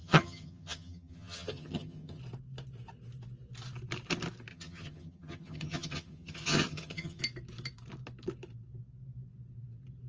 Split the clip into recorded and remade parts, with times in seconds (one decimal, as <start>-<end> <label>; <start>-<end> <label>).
0.0-2.2 remade; 2.2-4.5 recorded; 4.5-7.2 remade; 7.2-10.1 recorded